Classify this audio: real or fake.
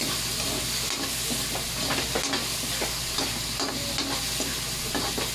real